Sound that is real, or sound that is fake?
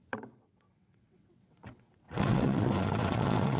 fake